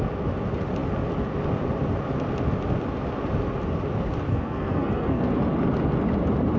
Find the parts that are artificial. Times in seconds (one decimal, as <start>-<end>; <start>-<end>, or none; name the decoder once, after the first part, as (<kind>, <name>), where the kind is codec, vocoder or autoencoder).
4.3-5.3 (codec, SNAC)